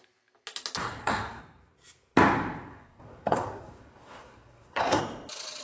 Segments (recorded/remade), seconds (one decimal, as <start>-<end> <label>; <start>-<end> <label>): 0.0-0.8 recorded; 0.8-1.4 remade; 1.4-2.7 recorded; 2.7-5.0 remade; 5.0-5.6 recorded